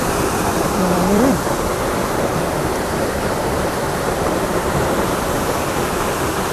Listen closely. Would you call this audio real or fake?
fake